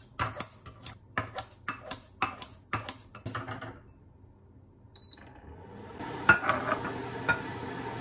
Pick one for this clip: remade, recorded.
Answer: recorded